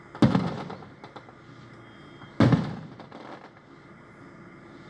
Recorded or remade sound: recorded